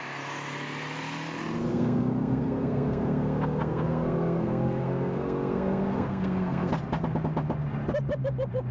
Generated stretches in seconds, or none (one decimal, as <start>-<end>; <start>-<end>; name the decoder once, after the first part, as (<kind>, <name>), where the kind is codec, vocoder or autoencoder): 1.7-6.7 (codec, SNAC)